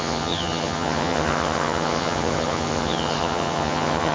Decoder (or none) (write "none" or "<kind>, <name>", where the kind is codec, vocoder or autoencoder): vocoder, HiFi-GAN